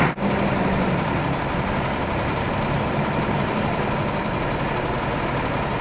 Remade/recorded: recorded